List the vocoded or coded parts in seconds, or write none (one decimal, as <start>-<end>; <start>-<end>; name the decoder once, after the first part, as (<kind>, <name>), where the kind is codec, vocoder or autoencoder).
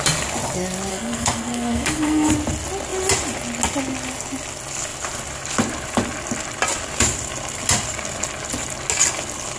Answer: 0.9-2.3 (codec, SNAC)